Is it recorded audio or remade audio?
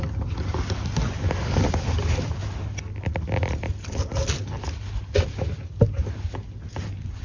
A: recorded